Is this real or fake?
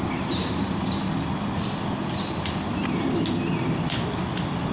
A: real